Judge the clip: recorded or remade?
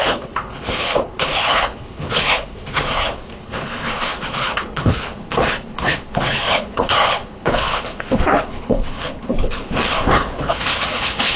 remade